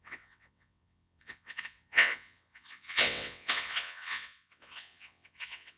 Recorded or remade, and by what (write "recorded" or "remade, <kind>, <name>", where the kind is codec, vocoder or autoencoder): remade, vocoder, WaveNeXt